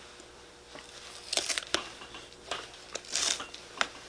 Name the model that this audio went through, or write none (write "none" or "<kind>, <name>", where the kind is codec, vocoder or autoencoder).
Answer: none